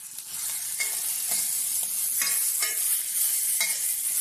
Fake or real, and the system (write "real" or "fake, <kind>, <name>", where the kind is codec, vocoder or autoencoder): real